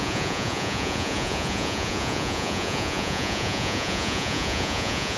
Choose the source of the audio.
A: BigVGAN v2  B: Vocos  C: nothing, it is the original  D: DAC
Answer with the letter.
B